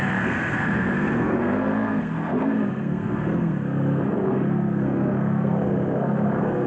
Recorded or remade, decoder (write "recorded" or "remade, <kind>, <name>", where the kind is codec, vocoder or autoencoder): remade, codec, SNAC